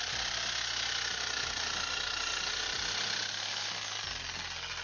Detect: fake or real real